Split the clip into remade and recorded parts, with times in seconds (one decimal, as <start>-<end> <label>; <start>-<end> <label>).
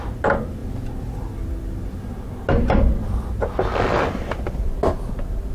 0.0-5.5 recorded